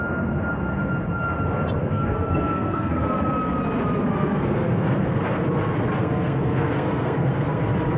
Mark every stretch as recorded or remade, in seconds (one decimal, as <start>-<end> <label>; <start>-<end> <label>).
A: 0.0-1.8 recorded; 1.8-3.2 remade; 3.2-4.1 recorded; 4.1-5.4 remade; 5.4-6.0 recorded; 6.0-7.6 remade; 7.6-8.0 recorded